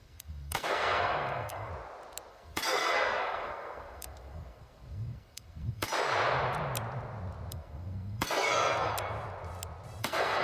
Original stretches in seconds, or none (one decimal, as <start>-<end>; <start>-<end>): 1.7-2.3; 5.9-7.5; 8.9-10.0